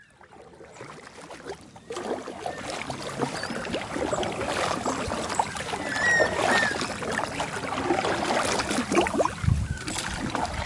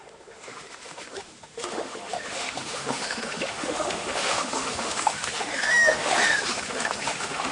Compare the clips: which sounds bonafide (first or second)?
first